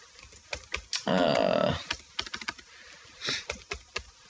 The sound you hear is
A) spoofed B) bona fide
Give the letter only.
B